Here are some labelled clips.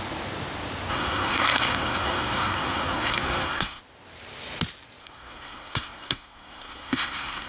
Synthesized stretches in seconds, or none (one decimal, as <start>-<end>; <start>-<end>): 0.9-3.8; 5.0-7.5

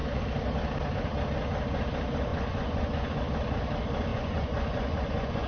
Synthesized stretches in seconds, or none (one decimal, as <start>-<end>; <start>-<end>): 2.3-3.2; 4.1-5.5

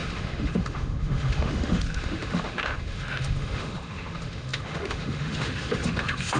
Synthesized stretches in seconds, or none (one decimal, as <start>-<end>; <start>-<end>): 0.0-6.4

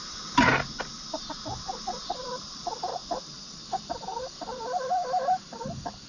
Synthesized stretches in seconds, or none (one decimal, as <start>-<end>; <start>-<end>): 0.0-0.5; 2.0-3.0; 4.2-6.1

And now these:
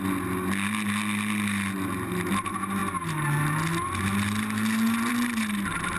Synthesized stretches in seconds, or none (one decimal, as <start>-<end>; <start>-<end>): none

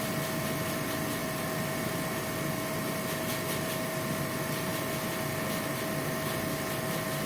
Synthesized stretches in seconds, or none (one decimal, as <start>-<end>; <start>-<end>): none

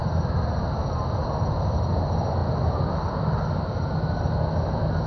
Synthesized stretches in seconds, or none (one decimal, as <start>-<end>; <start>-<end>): none

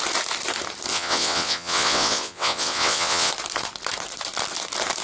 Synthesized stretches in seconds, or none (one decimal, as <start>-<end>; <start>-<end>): 0.9-3.3